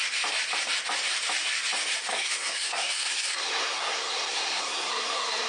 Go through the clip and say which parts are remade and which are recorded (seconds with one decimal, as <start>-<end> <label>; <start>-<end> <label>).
0.0-2.1 recorded; 2.1-5.5 remade